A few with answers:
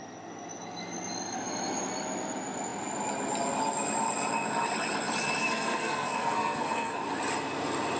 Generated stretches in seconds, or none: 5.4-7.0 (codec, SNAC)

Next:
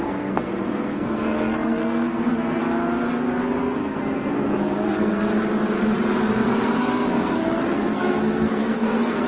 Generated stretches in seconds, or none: 0.0-2.6 (codec, SNAC); 3.6-5.3; 6.3-9.3

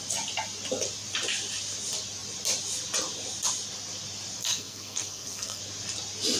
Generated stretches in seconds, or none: 4.4-5.6 (codec, SNAC)

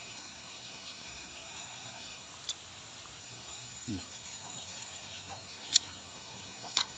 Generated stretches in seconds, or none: 0.0-2.3 (codec, SNAC); 3.2-7.0

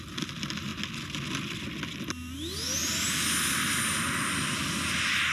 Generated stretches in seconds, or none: none

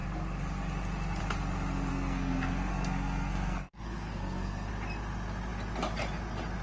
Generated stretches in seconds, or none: 1.9-4.7 (codec, SNAC)

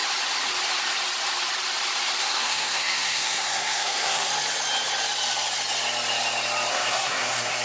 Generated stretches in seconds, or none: 2.2-4.3 (codec, SNAC); 6.7-7.6

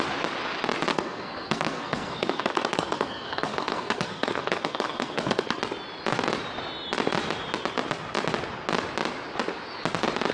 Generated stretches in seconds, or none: 0.9-5.6 (codec, SNAC)